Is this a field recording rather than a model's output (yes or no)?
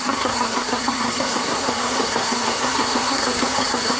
no